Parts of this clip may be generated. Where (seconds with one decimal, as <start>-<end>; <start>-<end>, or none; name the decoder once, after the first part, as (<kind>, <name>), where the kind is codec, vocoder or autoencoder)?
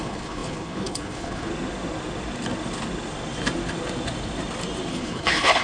0.0-1.5 (codec, HILCodec); 4.9-5.6